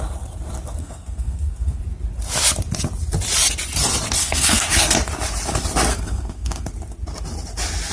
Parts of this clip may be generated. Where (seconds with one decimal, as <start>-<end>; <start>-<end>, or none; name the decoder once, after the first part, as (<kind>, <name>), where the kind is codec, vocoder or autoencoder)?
0.8-1.8 (codec, SNAC); 4.2-4.9; 5.9-6.7